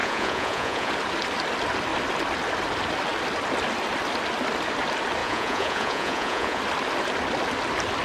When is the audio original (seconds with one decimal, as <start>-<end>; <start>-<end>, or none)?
0.9-5.2; 6.6-8.0